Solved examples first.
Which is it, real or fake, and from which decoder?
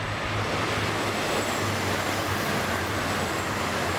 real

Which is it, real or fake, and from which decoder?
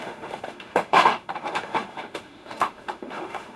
fake, autoencoder, DAC-VAE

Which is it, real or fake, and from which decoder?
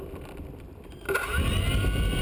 real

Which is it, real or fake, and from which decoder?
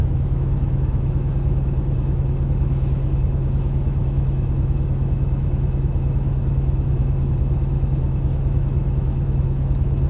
fake, autoencoder, DAC-VAE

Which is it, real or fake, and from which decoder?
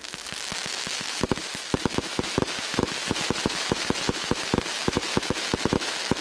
fake, autoencoder, DAC-VAE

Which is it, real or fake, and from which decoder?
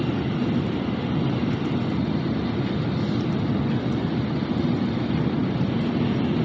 real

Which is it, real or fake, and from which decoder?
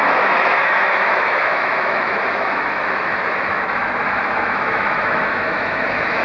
fake, autoencoder, DAC-VAE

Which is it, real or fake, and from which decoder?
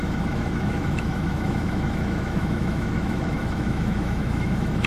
fake, autoencoder, DAC-VAE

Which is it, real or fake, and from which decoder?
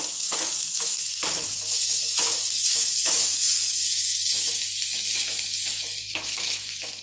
fake, autoencoder, DAC-VAE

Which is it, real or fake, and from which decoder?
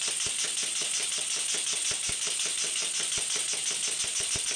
real